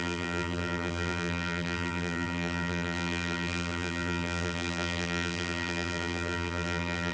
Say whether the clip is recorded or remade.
remade